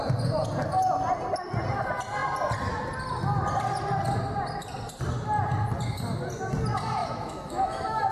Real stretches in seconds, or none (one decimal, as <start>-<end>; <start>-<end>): 0.0-7.0